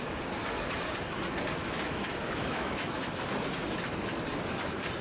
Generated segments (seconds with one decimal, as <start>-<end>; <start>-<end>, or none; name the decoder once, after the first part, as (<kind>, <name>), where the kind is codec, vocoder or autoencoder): 1.6-3.2 (autoencoder, DAC-VAE)